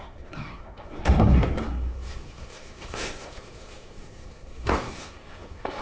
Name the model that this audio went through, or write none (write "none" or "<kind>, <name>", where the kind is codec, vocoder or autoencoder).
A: codec, SNAC